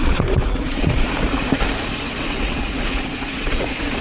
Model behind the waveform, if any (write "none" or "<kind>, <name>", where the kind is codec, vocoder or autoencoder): vocoder, Vocos